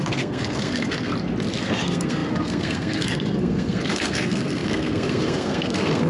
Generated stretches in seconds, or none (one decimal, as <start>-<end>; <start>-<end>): 0.0-1.1; 1.6-6.1